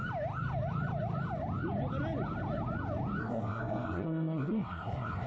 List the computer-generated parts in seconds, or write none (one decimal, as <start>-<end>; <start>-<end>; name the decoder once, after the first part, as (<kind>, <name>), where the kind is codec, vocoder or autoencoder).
3.2-5.3 (codec, SNAC)